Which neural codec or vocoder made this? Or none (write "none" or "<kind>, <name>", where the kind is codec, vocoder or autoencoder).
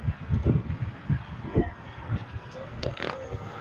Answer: codec, SNAC